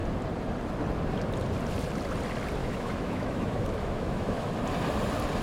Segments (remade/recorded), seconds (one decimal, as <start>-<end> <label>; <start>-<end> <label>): 0.0-2.6 recorded; 2.6-4.5 remade; 4.5-5.4 recorded